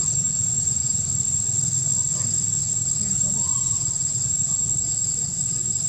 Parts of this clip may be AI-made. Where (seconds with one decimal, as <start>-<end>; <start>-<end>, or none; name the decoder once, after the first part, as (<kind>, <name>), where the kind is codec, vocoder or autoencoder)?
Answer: none